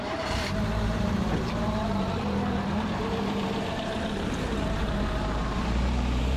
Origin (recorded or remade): remade